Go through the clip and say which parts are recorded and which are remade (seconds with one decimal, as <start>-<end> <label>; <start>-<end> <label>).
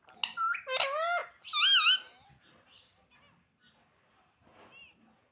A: 0.0-5.3 recorded